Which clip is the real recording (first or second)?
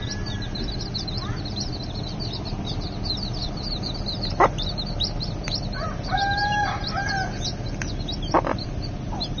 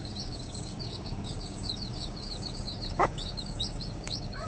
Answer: first